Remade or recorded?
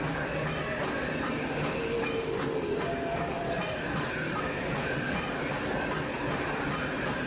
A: recorded